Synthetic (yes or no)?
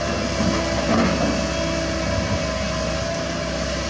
no